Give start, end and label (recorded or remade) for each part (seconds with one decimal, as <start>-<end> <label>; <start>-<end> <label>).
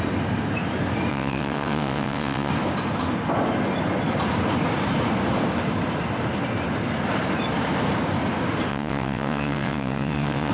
0.0-1.1 recorded; 1.1-2.5 remade; 2.5-8.7 recorded; 8.7-10.5 remade